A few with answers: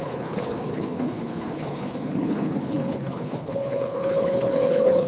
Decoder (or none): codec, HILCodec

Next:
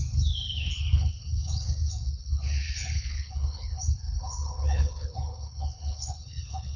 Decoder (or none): codec, HILCodec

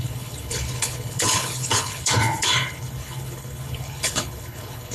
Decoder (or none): codec, HILCodec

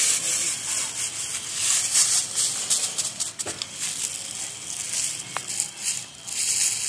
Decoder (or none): none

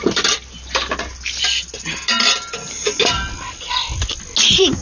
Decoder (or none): none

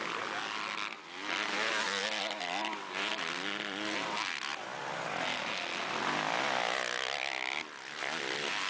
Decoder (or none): none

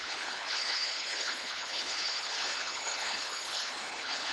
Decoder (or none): codec, HILCodec